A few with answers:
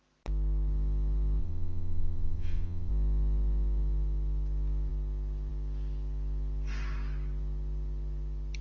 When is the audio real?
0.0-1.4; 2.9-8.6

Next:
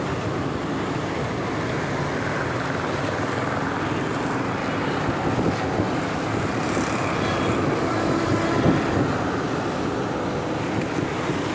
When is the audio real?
0.0-11.5

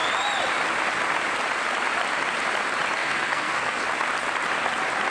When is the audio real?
0.0-3.0; 3.8-5.1